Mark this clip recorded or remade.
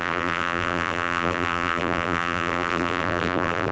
remade